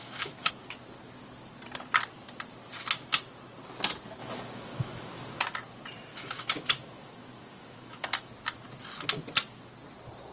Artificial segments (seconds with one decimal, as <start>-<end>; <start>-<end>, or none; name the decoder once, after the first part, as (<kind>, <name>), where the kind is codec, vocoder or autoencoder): 0.0-0.5 (autoencoder, DAC-VAE); 4.2-5.4; 6.1-8.3

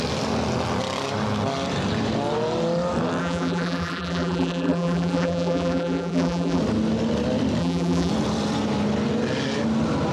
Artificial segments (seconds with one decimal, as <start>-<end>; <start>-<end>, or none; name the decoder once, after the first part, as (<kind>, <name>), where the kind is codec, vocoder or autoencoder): 3.2-6.6 (vocoder, BigVGAN v2); 7.6-8.1

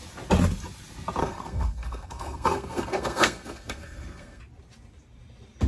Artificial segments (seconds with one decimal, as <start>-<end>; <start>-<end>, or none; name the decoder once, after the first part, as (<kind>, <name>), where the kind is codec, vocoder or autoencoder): 1.2-4.4 (codec, SNAC)

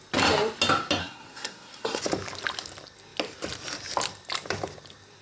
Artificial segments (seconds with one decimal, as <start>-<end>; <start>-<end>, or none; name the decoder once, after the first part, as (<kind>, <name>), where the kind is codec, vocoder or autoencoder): 1.0-2.0 (codec, SNAC)

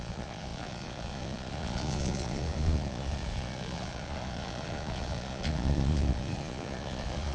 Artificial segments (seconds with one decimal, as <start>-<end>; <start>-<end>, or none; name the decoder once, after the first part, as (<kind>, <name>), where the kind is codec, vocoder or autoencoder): 0.0-7.3 (vocoder, Vocos)